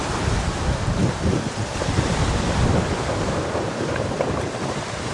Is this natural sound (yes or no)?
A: no